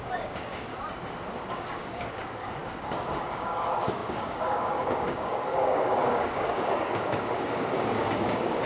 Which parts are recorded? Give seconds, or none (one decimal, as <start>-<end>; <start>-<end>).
0.7-1.4

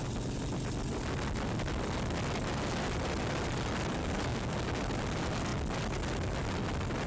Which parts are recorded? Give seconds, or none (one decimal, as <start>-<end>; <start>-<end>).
0.0-4.0; 4.8-7.1

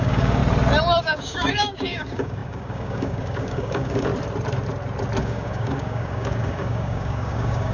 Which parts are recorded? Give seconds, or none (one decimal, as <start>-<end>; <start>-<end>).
0.4-1.0; 4.1-5.2

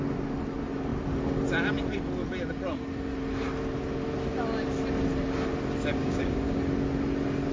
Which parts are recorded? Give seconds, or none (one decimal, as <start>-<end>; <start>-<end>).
0.0-6.0; 6.6-7.5

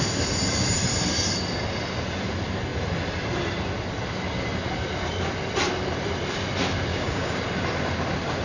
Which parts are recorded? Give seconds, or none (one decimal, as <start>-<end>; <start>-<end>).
0.0-6.9; 7.4-8.4

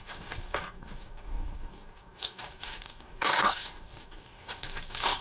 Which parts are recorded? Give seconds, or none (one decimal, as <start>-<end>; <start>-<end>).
none

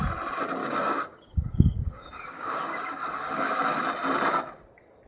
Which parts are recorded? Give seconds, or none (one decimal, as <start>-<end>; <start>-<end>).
0.0-0.6; 3.6-5.1

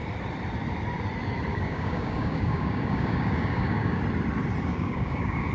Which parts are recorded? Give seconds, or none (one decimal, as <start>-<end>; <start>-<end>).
0.0-1.5; 4.0-4.7